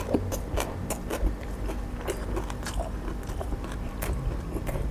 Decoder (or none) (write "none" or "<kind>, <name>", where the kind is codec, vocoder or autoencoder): none